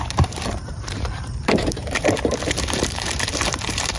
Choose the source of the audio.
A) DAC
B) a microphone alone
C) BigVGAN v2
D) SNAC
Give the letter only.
C